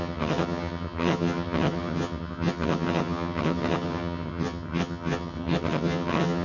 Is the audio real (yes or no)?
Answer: no